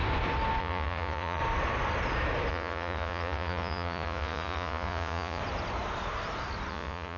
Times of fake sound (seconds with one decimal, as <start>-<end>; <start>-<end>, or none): 0.6-1.4; 2.5-5.4; 6.7-7.2